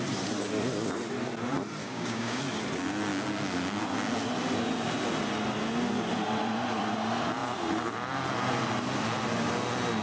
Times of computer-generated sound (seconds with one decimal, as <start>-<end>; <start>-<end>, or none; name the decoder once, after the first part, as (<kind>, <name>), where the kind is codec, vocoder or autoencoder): 1.8-2.4 (codec, DAC)